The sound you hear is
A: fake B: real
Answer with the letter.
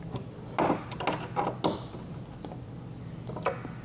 B